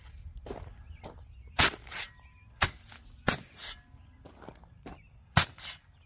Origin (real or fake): real